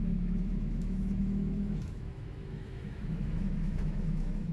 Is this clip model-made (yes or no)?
yes